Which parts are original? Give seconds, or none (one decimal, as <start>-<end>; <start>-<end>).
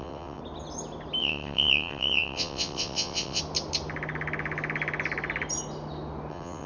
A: 0.4-1.2; 3.4-6.3